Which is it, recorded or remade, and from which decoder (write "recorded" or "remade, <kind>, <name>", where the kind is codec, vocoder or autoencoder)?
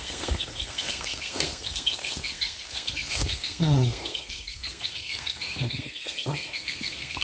remade, codec, SNAC